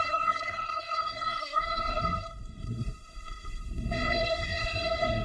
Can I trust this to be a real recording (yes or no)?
no